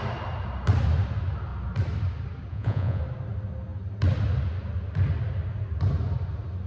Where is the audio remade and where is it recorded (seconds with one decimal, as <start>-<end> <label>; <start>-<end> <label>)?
0.0-2.5 recorded; 2.5-3.0 remade; 3.0-6.7 recorded